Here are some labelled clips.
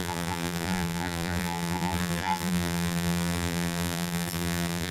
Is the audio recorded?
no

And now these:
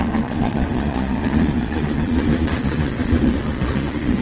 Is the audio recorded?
no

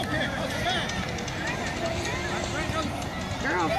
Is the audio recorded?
yes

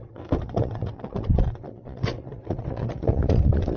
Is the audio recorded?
no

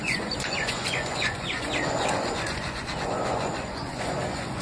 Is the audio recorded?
no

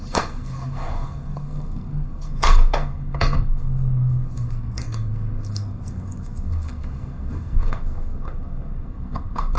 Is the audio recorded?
no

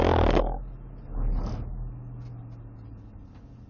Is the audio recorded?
yes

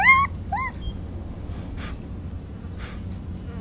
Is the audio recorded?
yes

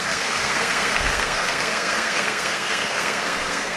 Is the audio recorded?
no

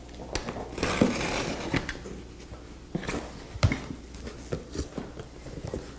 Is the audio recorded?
yes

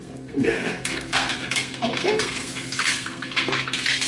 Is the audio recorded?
no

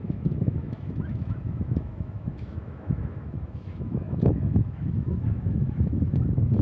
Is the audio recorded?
no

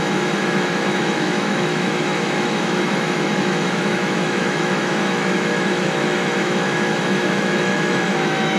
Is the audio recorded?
no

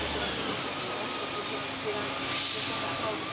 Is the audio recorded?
yes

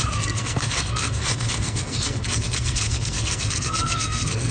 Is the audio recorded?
no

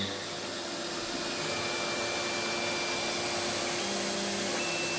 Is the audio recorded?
yes